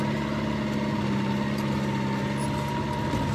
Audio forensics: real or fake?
real